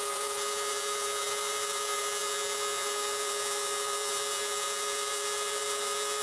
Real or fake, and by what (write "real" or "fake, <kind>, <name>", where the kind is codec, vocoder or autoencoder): fake, vocoder, Vocos